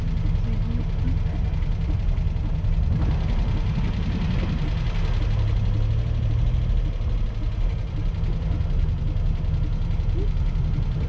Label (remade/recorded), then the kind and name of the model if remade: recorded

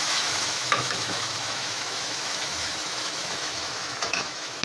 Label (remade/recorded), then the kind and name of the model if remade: remade, autoencoder, DAC-VAE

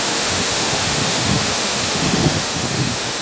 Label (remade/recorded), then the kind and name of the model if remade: remade, autoencoder, DAC-VAE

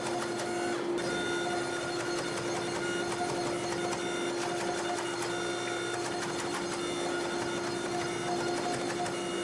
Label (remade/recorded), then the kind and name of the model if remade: recorded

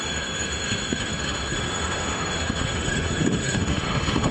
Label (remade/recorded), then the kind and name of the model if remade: remade, autoencoder, DAC-VAE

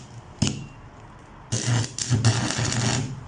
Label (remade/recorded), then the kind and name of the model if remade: recorded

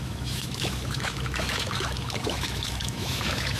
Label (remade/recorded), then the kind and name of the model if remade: remade, autoencoder, DAC-VAE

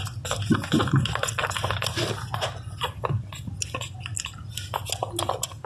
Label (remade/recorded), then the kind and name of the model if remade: recorded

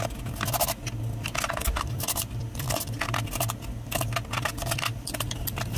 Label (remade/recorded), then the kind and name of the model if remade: recorded